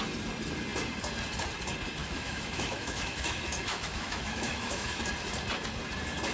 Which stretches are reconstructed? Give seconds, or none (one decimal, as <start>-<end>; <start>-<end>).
2.0-5.0